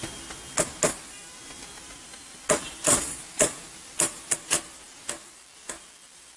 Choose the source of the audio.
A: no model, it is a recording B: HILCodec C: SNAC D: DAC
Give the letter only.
A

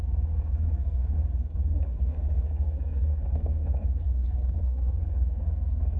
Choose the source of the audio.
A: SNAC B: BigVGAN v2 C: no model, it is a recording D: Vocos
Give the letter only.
A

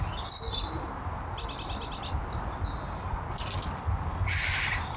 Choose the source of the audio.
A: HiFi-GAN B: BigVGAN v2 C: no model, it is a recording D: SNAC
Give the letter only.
C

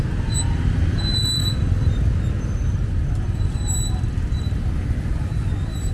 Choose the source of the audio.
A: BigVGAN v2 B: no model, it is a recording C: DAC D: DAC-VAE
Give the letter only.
B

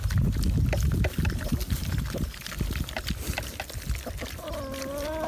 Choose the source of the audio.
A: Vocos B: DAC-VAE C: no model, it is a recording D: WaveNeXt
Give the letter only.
C